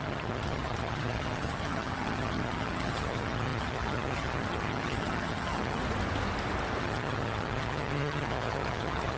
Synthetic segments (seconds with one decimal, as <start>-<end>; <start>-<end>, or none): 0.0-5.8; 6.8-9.2